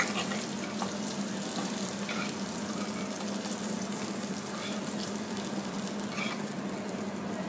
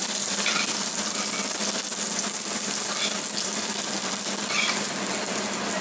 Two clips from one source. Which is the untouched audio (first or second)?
second